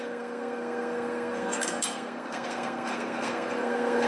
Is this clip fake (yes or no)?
yes